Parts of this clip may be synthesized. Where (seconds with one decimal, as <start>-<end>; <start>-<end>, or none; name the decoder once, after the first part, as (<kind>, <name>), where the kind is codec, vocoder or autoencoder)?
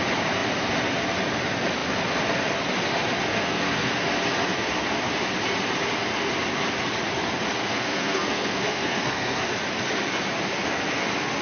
3.3-3.9 (codec, SNAC); 7.6-9.4